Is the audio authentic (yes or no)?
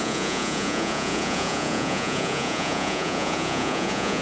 no